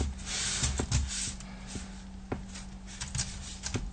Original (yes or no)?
yes